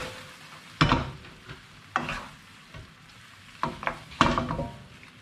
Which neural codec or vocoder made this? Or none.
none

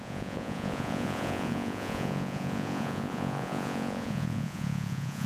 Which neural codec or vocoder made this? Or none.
vocoder, Vocos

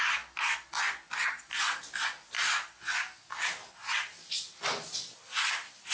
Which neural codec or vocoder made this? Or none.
none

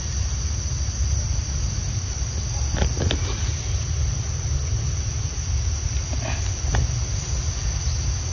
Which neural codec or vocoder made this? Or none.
none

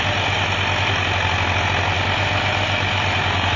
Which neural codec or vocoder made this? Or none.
none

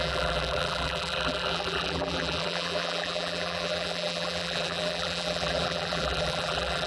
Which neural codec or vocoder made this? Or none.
vocoder, BigVGAN v2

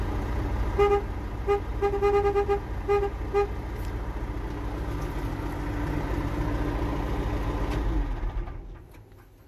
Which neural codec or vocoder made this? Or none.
none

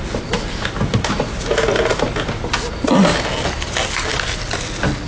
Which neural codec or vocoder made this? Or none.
none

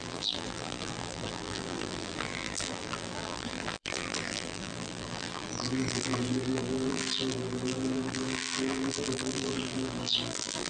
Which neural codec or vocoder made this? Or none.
vocoder, BigVGAN v2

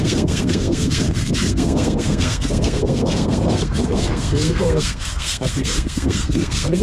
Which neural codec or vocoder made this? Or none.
codec, SNAC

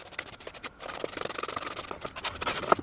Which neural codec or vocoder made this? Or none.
vocoder, BigVGAN v2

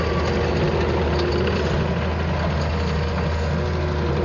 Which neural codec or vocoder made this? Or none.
none